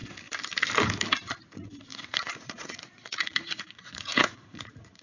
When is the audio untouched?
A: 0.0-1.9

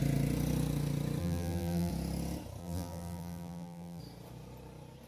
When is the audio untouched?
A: 0.0-1.2; 1.9-2.6; 4.0-5.1

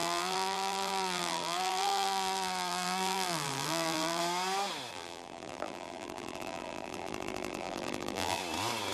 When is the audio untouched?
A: 4.2-4.9; 8.4-8.9

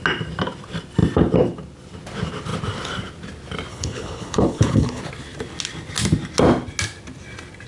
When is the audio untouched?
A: 0.0-3.7; 5.0-7.7

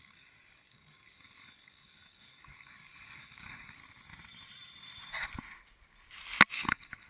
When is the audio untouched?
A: 3.8-6.5